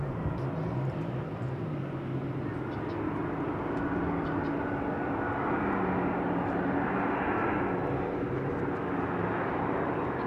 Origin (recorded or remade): recorded